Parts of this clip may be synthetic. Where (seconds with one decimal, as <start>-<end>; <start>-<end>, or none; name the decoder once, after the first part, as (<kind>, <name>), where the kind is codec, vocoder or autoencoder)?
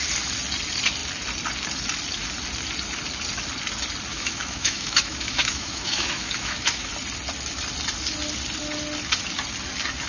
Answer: 4.1-6.9 (autoencoder, DAC-VAE)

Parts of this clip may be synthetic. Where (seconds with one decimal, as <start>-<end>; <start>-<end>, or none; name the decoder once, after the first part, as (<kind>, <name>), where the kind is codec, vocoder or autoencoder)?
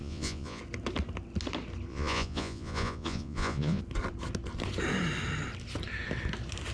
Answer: 0.0-0.6 (vocoder, Vocos); 1.9-3.8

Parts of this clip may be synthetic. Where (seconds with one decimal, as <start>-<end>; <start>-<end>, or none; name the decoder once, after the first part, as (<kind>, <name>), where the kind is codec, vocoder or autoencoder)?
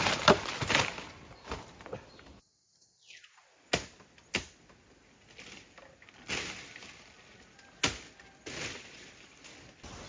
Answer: none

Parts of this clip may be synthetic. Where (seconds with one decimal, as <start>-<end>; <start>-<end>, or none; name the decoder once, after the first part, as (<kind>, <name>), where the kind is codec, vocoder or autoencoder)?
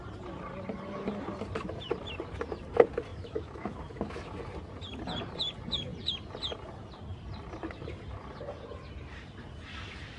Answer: 3.1-4.4 (autoencoder, DAC-VAE)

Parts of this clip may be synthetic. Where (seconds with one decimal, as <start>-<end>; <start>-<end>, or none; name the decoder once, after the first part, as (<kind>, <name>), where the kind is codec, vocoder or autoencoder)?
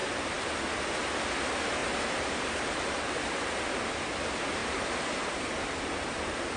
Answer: 1.8-3.7 (vocoder, BigVGAN v2); 4.6-5.5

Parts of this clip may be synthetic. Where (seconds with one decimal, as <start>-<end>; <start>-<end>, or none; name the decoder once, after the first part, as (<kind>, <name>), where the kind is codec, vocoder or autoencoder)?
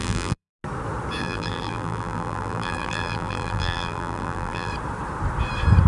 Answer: 0.0-0.5 (vocoder, BigVGAN v2); 1.2-4.7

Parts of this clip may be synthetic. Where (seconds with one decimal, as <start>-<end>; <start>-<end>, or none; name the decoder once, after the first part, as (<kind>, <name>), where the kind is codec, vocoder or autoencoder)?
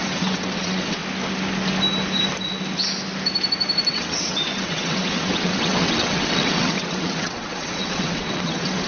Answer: 0.0-1.0 (vocoder, WaveNeXt); 3.9-8.9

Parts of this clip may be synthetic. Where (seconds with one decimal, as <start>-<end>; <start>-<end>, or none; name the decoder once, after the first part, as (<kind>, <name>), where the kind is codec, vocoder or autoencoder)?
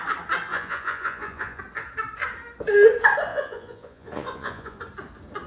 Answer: 0.5-1.6 (vocoder, Vocos); 3.3-4.8